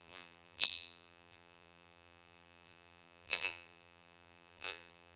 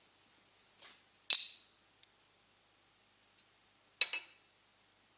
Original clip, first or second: second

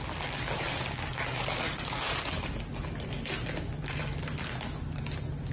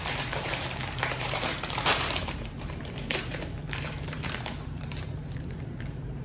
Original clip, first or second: first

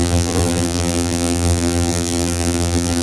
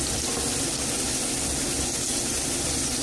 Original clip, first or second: second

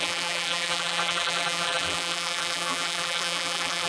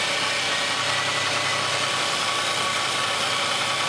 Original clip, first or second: second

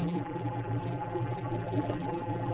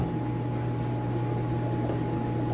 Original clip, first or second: second